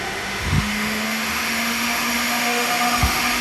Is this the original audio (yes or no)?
no